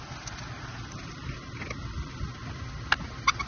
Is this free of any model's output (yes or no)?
yes